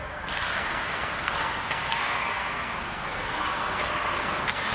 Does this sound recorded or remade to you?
remade